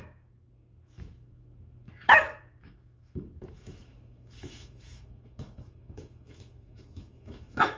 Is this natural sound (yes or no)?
no